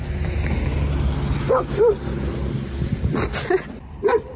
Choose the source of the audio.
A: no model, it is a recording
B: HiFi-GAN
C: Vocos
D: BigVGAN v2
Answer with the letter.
A